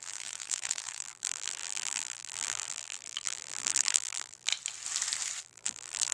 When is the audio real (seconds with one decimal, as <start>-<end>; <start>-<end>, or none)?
4.5-5.4